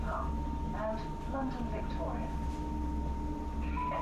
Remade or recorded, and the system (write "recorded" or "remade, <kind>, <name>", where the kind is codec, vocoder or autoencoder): recorded